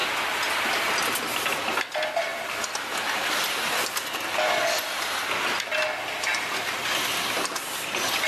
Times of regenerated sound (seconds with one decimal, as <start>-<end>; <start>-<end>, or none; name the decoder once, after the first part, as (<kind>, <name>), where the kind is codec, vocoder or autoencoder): none